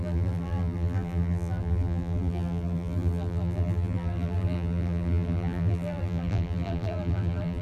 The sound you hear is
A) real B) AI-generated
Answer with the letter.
B